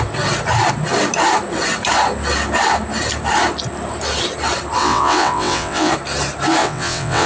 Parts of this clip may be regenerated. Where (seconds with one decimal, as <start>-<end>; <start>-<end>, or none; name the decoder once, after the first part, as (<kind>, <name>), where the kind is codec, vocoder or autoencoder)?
4.8-5.9 (vocoder, WaveNeXt); 6.6-7.3